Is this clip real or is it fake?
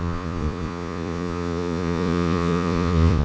fake